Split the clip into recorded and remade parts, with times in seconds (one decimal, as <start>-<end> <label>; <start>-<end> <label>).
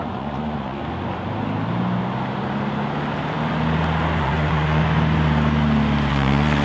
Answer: 0.0-0.8 remade; 0.8-4.2 recorded; 4.2-4.8 remade; 4.8-6.1 recorded; 6.1-6.6 remade